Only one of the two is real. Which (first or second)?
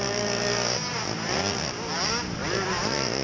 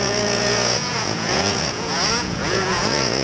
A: first